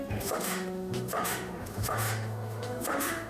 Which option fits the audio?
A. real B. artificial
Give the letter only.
B